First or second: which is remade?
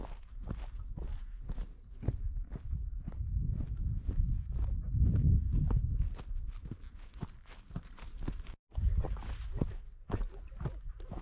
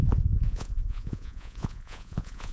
second